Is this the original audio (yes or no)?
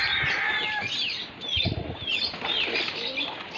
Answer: yes